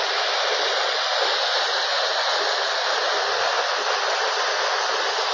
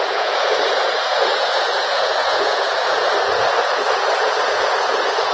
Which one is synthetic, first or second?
second